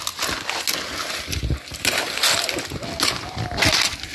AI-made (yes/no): no